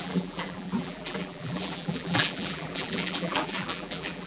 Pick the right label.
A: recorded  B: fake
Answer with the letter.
B